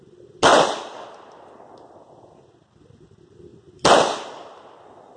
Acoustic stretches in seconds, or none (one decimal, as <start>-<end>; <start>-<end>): 0.0-5.2